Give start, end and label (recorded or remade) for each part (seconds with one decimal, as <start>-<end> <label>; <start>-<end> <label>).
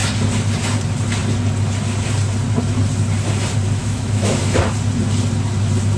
0.0-3.8 recorded; 3.8-4.4 remade; 4.4-6.0 recorded